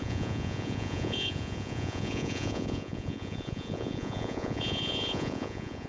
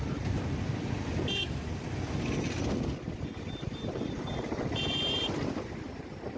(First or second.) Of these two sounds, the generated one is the first